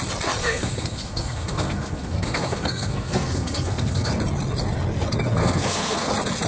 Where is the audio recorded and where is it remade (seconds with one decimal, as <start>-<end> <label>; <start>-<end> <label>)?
0.0-0.4 recorded; 0.4-4.1 remade; 4.1-5.4 recorded; 5.4-6.1 remade; 6.1-6.5 recorded